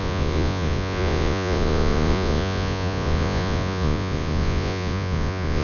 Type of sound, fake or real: fake